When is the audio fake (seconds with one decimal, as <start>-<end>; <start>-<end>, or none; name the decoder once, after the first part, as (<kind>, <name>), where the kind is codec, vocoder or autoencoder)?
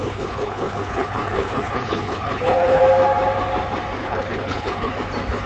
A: 0.0-2.8 (codec, HILCodec); 4.0-4.9